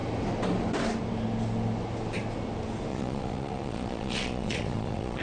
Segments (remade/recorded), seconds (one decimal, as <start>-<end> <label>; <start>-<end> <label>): 0.0-2.9 recorded; 2.9-5.2 remade